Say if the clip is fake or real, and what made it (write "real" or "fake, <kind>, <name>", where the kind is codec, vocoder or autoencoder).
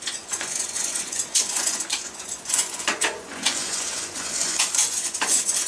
fake, vocoder, Vocos